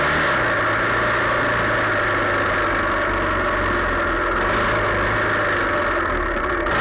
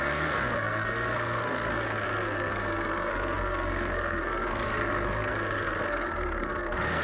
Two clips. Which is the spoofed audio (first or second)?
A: second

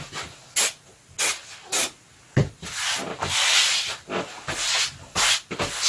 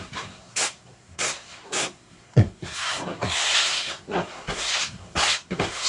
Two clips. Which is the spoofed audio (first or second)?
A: second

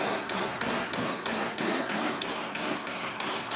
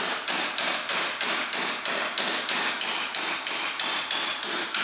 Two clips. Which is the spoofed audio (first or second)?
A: first